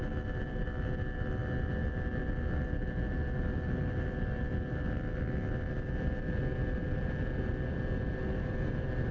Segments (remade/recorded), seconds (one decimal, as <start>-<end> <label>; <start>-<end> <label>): 0.0-9.1 recorded